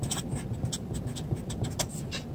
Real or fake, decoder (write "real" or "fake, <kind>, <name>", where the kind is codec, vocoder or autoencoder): real